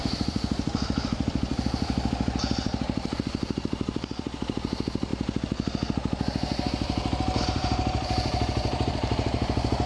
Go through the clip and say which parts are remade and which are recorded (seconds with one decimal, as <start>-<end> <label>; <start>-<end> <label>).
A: 0.0-5.1 remade; 5.1-7.4 recorded; 7.4-9.9 remade